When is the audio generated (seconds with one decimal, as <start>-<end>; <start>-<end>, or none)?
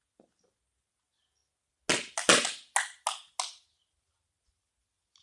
none